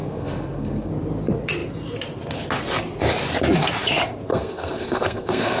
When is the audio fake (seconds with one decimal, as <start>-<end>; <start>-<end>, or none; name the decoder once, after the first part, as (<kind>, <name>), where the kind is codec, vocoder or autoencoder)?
0.0-0.9 (codec, SNAC); 4.3-5.6